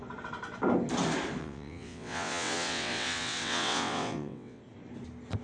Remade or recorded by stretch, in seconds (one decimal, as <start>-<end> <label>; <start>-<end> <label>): 0.0-1.4 recorded; 1.4-4.6 remade; 4.6-5.4 recorded